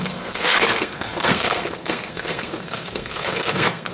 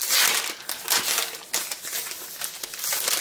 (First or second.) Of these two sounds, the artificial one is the first